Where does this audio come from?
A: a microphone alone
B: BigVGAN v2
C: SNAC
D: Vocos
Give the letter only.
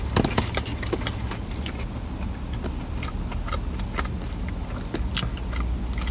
A